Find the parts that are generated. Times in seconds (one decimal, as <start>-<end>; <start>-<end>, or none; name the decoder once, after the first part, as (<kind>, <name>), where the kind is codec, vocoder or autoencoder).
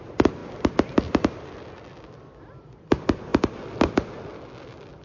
none